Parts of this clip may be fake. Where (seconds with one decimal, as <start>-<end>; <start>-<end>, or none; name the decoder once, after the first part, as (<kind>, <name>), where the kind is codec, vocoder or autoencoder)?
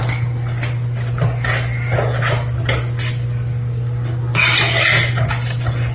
none